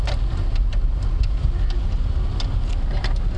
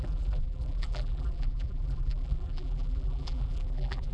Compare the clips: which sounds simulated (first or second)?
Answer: second